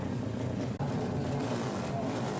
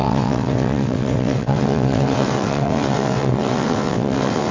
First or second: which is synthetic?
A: second